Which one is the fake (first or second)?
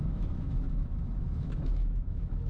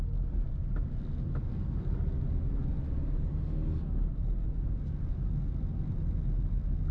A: first